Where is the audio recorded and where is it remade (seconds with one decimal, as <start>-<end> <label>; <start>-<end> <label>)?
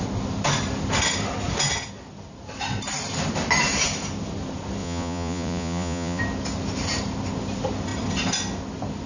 0.0-4.8 recorded; 4.8-6.2 remade; 6.2-9.1 recorded